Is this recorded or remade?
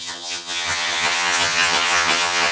remade